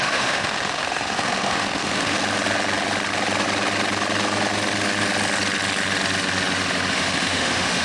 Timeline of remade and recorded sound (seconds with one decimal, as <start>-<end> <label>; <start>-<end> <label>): 0.0-2.2 remade; 2.2-6.9 recorded; 6.9-7.8 remade